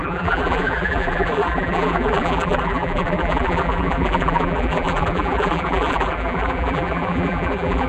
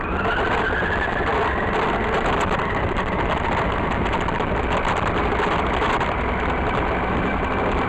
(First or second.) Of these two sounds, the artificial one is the first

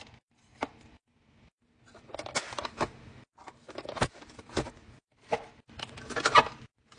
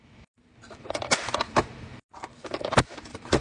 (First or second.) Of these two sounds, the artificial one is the second